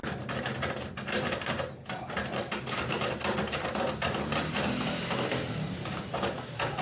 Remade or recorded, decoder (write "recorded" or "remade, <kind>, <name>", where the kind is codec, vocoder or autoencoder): recorded